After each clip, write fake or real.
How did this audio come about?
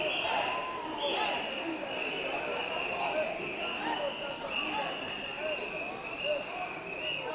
real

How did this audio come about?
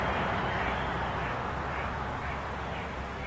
real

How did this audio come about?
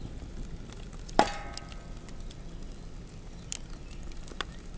real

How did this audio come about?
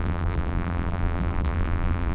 fake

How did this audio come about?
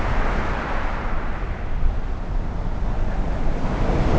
real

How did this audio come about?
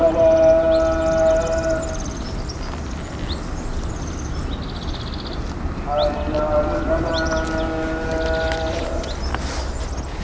real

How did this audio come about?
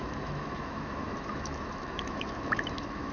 fake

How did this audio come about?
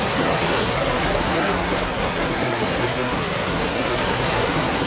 fake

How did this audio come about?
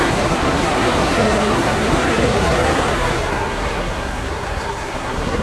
fake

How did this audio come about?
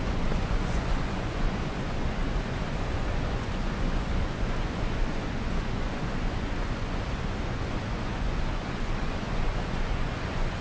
fake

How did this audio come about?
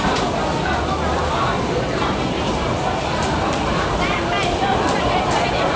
real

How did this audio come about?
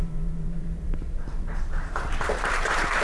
fake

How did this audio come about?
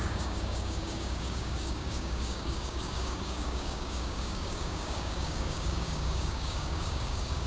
fake